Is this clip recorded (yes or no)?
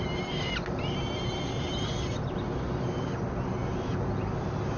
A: yes